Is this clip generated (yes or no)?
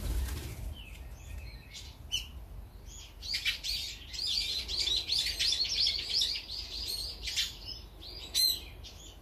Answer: no